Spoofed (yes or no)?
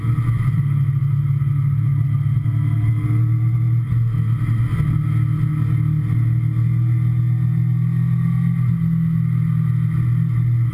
no